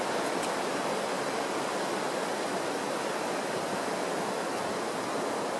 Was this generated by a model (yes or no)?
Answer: no